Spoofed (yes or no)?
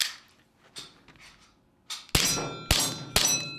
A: no